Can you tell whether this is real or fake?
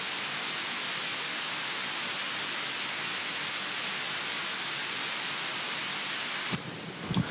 real